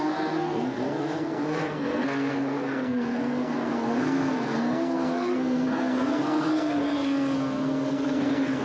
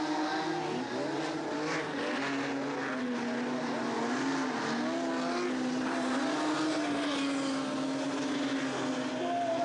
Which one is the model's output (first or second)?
first